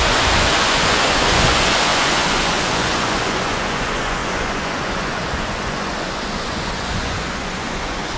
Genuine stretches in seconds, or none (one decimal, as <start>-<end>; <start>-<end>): none

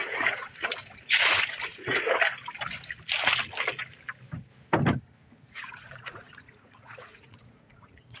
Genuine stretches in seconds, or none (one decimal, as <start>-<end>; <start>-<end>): 1.9-5.5

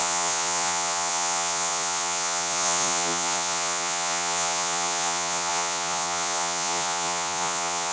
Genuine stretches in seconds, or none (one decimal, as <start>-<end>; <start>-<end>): none

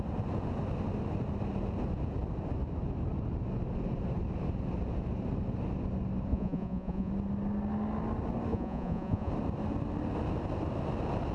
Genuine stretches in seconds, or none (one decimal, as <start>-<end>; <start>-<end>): 0.0-6.3; 7.1-8.5; 9.3-11.3

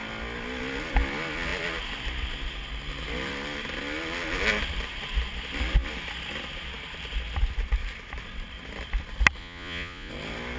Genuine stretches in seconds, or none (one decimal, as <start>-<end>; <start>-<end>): 0.0-9.4; 10.1-10.6

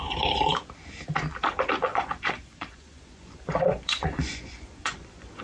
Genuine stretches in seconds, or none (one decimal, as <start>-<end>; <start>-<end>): 0.0-1.9

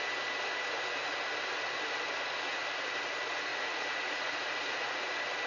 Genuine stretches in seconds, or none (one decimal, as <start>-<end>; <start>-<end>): 0.0-3.5; 5.1-5.5